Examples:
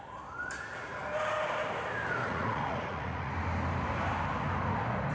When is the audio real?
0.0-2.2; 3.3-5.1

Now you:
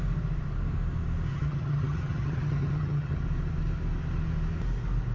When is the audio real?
0.0-1.3; 3.2-5.1

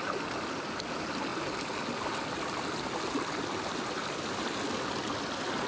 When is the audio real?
0.0-5.7

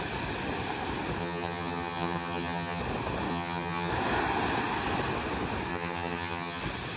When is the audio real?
0.0-1.2; 2.8-3.3; 3.9-5.7; 6.6-7.0

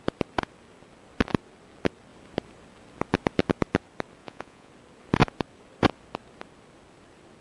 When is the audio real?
0.0-4.2; 4.7-7.4

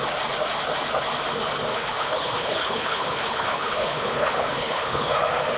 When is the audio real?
0.0-1.7; 5.1-5.6